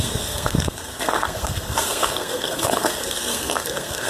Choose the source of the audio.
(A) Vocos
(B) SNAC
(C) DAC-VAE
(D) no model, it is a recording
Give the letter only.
B